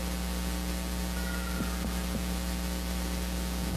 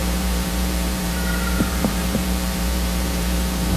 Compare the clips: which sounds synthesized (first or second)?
second